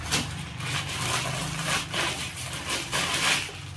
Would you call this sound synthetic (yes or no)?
no